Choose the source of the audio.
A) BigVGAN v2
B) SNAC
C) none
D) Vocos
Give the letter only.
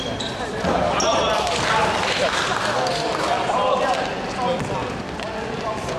C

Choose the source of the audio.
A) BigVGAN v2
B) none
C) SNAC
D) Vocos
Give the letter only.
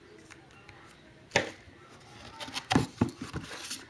B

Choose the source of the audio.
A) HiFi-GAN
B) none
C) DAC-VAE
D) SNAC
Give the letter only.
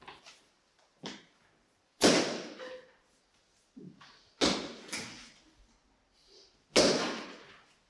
B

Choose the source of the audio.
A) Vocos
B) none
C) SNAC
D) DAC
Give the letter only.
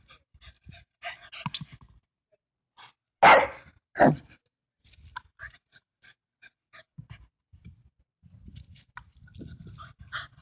B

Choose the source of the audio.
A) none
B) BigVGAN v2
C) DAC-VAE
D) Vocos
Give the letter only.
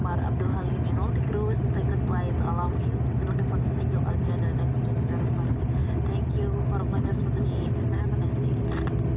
A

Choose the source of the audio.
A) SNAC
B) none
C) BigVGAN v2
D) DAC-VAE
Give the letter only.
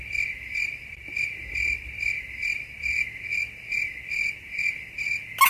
B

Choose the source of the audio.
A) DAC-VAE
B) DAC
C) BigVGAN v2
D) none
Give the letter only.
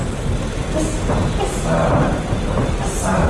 D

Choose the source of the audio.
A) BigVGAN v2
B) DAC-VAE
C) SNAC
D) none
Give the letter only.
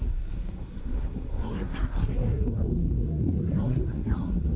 C